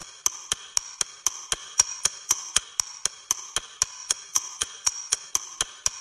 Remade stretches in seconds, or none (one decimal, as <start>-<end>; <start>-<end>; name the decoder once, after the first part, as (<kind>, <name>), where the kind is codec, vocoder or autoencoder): 1.6-2.6 (vocoder, Vocos); 4.0-5.3